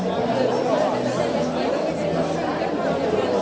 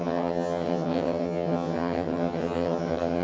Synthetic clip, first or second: second